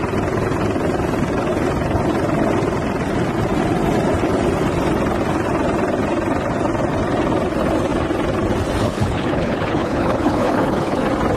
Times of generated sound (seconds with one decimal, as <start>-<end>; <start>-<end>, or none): 8.8-11.0